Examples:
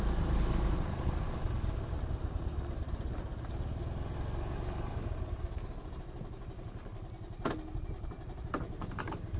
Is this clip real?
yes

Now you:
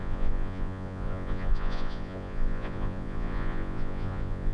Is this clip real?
no